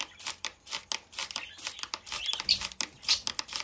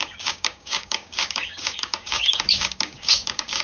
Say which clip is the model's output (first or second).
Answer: second